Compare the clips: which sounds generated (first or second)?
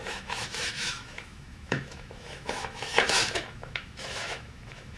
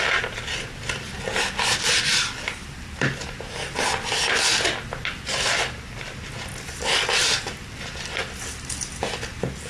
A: first